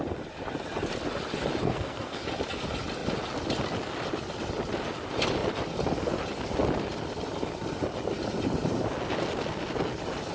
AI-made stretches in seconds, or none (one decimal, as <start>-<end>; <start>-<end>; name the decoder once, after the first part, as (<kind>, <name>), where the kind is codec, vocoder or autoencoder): 1.6-2.2 (codec, SNAC)